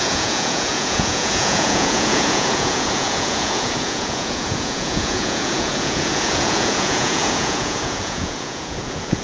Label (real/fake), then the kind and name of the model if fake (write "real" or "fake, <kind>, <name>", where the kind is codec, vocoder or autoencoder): fake, vocoder, Vocos